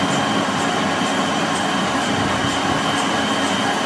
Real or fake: real